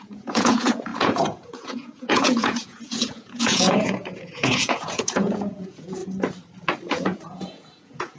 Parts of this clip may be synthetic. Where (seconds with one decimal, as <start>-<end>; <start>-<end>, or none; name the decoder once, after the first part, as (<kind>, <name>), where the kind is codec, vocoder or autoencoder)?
0.0-6.0 (vocoder, Vocos); 6.9-8.2